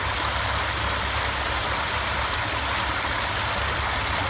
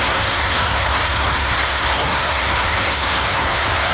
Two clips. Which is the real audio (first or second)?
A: first